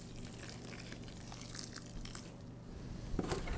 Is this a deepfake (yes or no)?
no